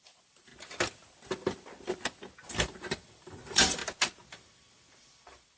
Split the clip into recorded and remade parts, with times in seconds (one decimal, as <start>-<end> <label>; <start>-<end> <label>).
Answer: 0.0-0.5 remade; 0.5-2.5 recorded; 2.5-3.8 remade; 3.8-4.3 recorded; 4.3-5.6 remade